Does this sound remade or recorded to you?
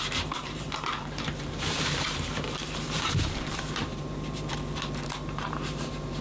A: remade